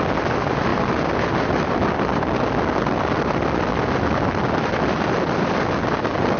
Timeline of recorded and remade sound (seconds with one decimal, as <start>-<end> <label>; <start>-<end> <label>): 0.0-6.4 recorded